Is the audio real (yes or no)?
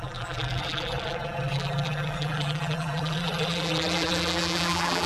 no